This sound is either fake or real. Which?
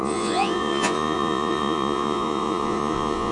fake